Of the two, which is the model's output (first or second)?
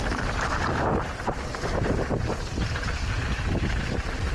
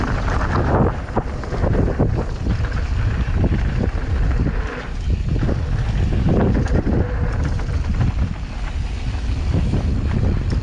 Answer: first